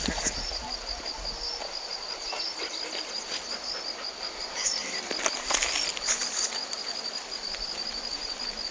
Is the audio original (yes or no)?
yes